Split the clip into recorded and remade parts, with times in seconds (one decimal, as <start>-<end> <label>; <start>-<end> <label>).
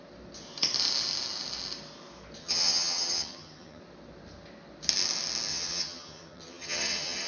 0.0-2.4 recorded; 2.4-3.8 remade; 3.8-5.5 recorded; 5.5-7.3 remade